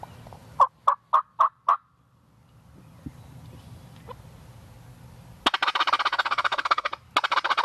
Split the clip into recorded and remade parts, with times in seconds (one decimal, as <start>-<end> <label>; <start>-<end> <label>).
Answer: 0.0-6.1 recorded; 6.1-6.9 remade; 6.9-7.6 recorded